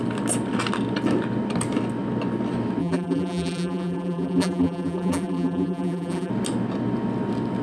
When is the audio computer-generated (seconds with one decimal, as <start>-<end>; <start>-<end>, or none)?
2.8-6.3